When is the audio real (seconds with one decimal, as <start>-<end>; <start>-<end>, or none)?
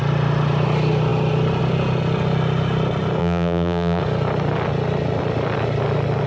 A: 0.0-3.2; 4.0-6.3